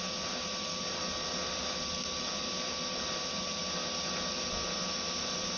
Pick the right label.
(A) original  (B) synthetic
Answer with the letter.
A